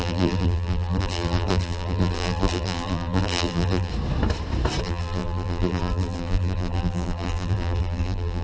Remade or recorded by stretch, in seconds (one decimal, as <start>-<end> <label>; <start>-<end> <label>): 0.0-3.9 remade; 3.9-4.8 recorded; 4.8-8.4 remade